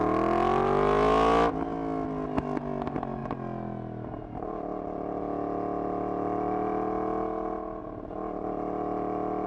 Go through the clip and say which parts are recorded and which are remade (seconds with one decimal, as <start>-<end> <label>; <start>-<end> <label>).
0.0-9.5 recorded